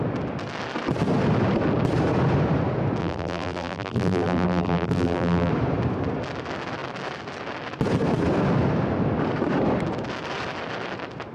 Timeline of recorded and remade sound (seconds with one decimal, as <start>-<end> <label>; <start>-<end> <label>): 0.0-3.0 recorded; 3.0-5.5 remade; 5.5-11.3 recorded